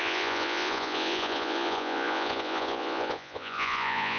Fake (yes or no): yes